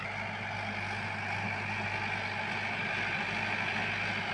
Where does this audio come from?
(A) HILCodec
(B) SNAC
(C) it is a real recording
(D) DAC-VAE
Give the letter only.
C